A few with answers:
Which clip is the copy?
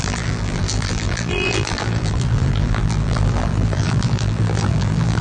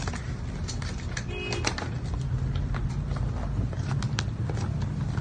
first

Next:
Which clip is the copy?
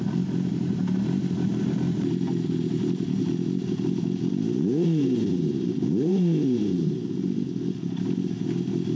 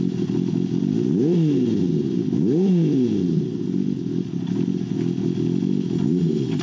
first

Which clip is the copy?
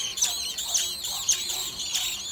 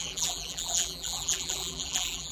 second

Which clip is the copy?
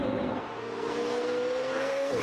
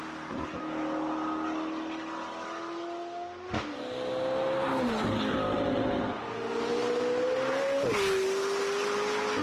first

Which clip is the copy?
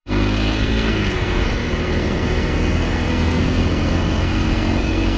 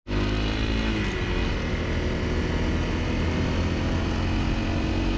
first